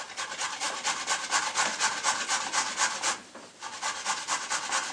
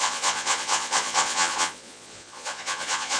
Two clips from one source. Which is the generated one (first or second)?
second